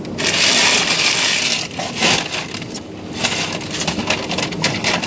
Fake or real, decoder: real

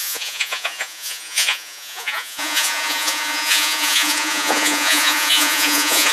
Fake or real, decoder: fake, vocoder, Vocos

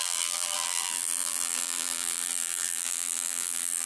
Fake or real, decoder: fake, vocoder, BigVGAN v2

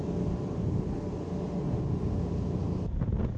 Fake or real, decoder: real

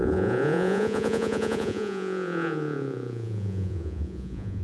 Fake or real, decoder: fake, vocoder, Vocos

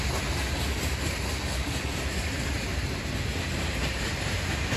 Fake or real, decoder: real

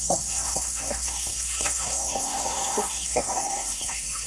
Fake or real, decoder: fake, codec, SNAC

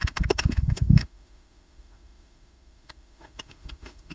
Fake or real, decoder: fake, autoencoder, DAC-VAE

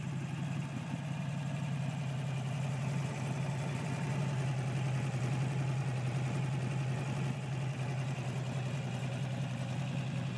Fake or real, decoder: real